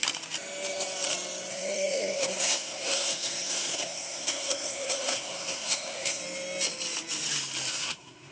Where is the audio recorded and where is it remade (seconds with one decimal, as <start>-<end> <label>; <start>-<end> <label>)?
0.0-1.5 recorded; 1.5-6.2 remade; 6.2-7.7 recorded; 7.7-8.3 remade